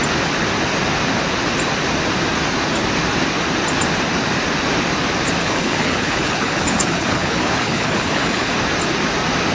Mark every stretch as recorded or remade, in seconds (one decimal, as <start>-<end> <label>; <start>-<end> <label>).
0.0-5.4 recorded; 5.4-8.5 remade; 8.5-9.5 recorded